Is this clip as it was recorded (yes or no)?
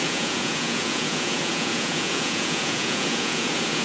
no